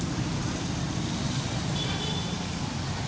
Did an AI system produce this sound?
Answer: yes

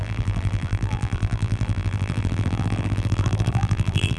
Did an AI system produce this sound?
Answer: yes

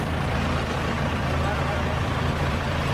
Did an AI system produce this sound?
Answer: yes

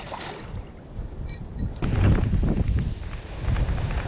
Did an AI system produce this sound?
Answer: no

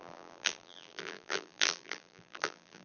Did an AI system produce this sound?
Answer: yes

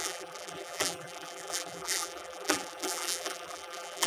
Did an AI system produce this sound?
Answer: yes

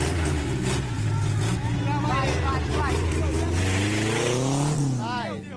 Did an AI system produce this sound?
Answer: no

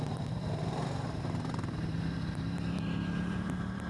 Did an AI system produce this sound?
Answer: yes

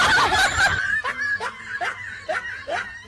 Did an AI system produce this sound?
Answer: no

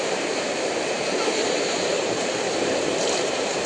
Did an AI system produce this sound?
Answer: yes